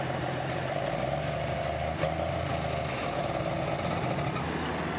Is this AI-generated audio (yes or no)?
no